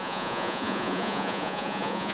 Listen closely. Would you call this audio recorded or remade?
remade